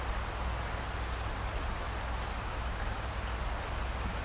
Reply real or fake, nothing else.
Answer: real